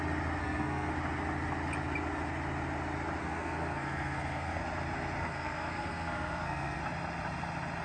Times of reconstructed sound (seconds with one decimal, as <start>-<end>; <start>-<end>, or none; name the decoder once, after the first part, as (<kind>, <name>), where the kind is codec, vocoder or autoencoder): 0.4-0.9 (codec, SNAC); 3.2-4.6; 5.2-6.8